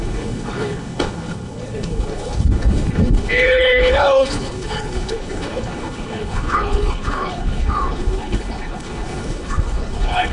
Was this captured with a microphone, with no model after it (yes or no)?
no